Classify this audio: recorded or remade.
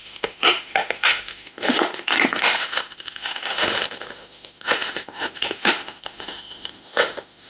remade